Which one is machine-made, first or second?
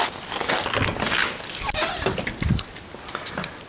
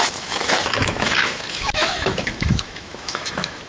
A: second